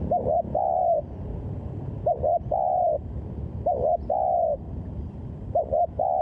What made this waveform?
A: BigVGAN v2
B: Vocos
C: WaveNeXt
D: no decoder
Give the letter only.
D